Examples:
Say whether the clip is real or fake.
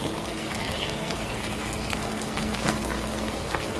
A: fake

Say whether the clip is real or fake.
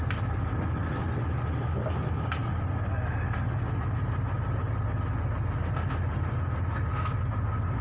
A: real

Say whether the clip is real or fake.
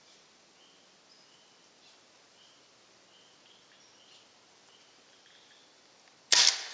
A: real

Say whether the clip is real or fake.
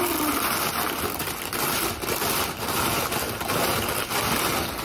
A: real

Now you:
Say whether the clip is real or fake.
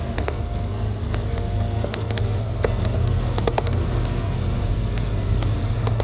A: fake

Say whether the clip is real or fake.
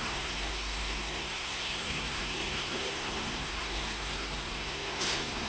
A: fake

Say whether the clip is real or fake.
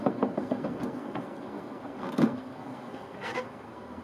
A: fake